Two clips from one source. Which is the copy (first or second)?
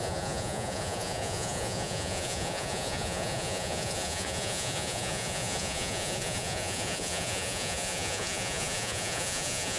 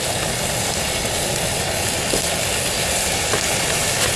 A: first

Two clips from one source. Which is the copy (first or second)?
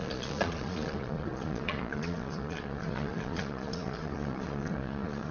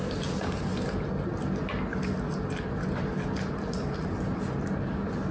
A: first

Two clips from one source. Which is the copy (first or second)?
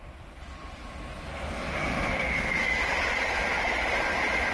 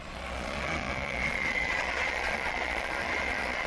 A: second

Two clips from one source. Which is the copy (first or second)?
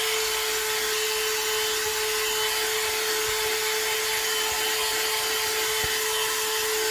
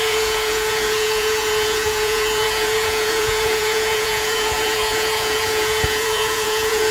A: second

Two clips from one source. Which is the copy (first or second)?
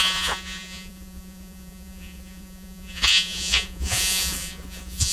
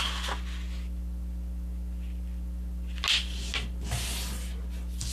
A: first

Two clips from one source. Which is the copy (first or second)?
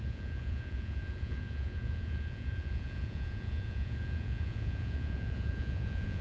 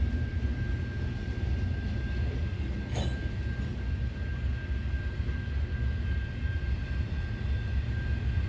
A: first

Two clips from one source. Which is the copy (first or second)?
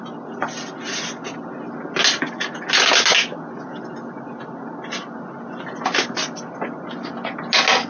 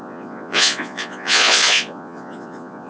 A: second